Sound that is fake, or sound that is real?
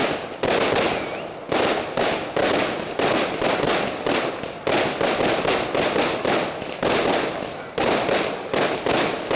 real